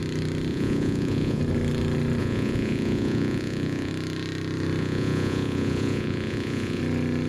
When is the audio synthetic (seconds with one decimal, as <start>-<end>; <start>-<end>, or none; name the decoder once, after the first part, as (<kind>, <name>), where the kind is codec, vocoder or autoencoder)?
0.5-1.4 (vocoder, Vocos); 2.2-3.9; 4.8-6.8